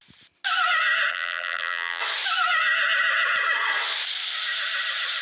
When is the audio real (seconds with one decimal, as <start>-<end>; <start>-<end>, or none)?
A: 0.0-1.1; 2.0-5.2